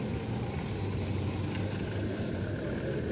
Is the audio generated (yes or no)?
no